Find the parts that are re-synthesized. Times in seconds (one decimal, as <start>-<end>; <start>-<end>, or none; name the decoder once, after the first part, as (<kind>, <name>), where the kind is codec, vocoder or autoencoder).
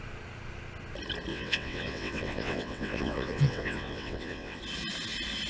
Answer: 1.3-4.6 (vocoder, WaveNeXt)